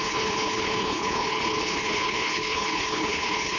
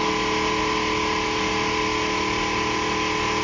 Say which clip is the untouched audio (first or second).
second